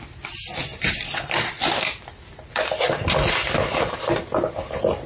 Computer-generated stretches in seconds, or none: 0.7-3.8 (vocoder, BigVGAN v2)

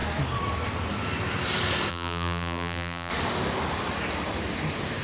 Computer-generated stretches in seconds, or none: 1.9-3.1 (vocoder, BigVGAN v2)

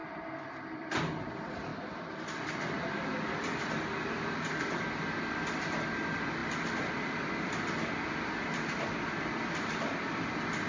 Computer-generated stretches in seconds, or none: 0.0-0.9 (vocoder, BigVGAN v2)

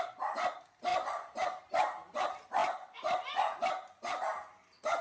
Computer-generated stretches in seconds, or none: none

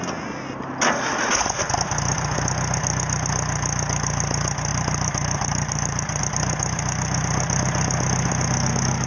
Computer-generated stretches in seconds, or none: 4.7-6.2 (vocoder, BigVGAN v2)

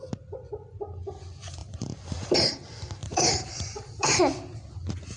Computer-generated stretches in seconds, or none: 1.6-2.5 (vocoder, BigVGAN v2); 3.0-4.2